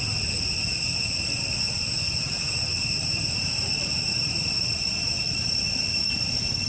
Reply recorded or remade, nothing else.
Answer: recorded